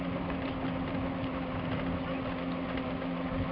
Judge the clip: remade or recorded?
recorded